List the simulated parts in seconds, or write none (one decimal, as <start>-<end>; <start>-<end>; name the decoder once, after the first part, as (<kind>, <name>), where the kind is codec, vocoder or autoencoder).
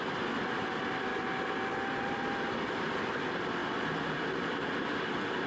0.0-1.1 (vocoder, BigVGAN v2); 1.9-5.5